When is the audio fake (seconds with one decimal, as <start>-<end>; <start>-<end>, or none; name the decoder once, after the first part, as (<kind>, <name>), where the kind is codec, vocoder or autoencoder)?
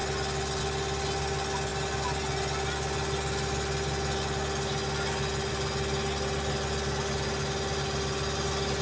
none